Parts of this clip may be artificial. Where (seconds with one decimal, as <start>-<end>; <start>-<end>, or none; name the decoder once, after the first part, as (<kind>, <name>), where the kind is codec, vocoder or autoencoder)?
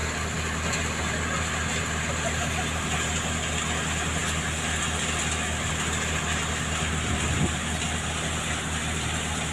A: none